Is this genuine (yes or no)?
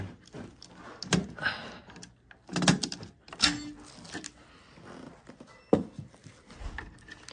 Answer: yes